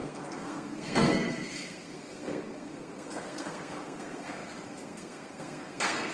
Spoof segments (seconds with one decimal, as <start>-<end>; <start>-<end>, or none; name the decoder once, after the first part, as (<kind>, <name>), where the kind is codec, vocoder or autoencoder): 0.0-6.1 (codec, SNAC)